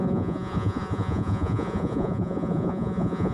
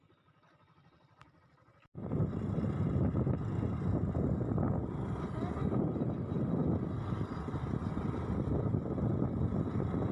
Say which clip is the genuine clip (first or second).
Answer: second